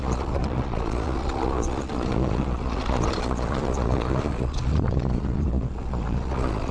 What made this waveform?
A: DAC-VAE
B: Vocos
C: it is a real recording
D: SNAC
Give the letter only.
B